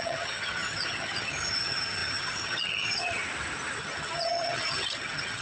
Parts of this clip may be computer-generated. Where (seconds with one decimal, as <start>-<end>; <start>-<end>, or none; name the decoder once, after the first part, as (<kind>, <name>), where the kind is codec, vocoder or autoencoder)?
0.0-3.2 (vocoder, HiFi-GAN); 3.8-5.4